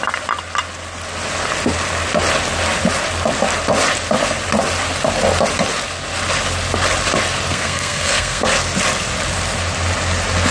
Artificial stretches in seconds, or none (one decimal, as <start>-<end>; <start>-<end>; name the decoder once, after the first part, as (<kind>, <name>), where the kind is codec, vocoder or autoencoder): 7.5-8.4 (codec, SNAC)